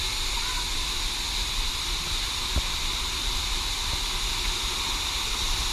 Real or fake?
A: real